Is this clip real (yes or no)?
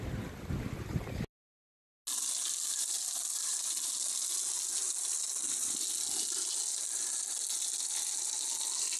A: yes